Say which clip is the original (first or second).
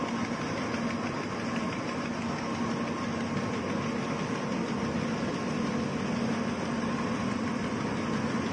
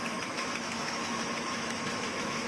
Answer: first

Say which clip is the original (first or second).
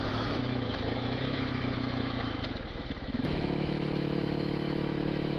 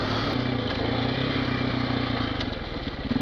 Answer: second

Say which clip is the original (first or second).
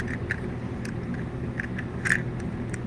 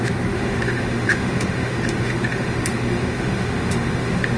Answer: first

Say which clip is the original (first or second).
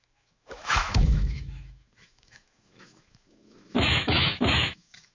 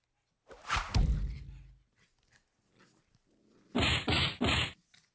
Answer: second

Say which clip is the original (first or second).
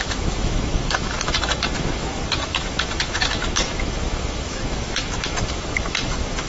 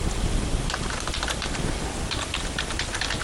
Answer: second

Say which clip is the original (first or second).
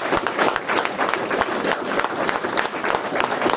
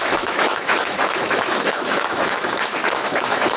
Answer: first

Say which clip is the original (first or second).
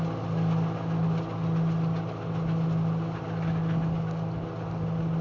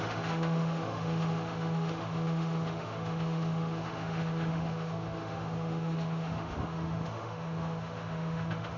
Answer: first